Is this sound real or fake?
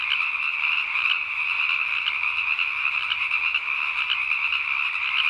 real